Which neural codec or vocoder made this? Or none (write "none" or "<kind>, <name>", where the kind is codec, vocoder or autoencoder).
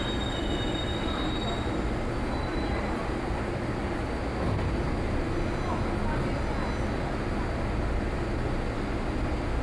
none